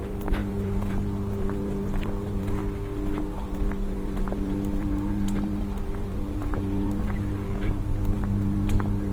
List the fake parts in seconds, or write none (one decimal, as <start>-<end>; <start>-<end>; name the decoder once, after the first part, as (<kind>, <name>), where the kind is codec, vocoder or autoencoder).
0.0-2.6 (vocoder, BigVGAN v2); 3.2-9.1